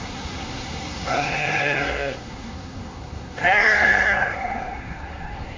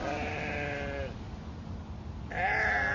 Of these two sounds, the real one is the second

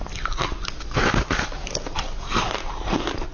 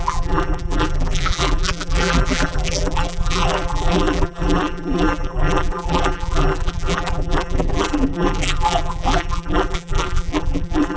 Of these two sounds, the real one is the first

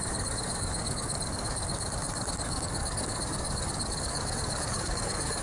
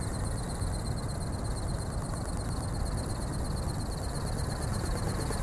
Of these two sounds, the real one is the second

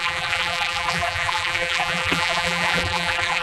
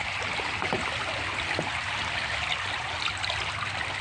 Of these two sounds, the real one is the second